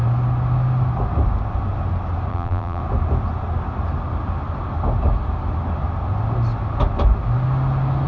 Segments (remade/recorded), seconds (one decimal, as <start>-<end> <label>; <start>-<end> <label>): 0.0-2.3 recorded; 2.3-2.8 remade; 2.8-8.1 recorded